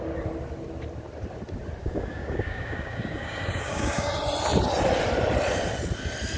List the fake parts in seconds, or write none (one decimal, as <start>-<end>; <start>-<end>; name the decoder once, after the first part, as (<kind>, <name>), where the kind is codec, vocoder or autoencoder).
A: 1.8-4.1 (codec, DAC)